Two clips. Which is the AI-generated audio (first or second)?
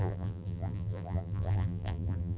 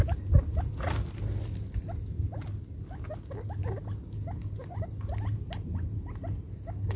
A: first